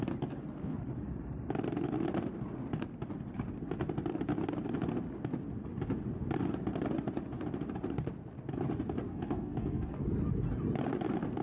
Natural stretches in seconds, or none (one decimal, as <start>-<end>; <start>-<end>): 0.0-9.1; 9.9-11.4